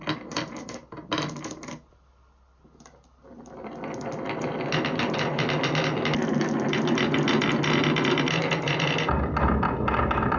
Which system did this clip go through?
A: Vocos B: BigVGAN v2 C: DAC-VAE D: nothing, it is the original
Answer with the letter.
D